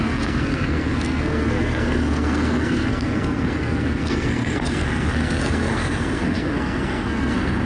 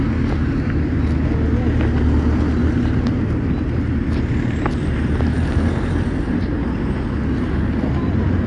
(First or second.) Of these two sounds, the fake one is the first